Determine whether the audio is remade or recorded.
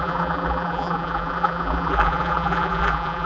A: remade